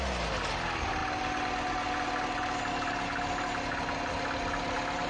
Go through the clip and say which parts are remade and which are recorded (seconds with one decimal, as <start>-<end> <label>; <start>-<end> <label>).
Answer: 0.0-5.1 recorded